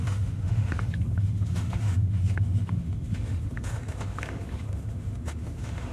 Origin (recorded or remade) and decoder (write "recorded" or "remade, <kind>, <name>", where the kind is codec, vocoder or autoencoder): remade, autoencoder, DAC-VAE